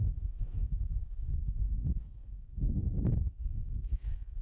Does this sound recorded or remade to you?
remade